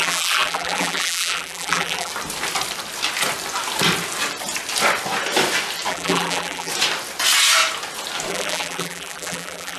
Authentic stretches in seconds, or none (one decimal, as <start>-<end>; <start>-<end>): 2.1-5.9; 6.7-8.3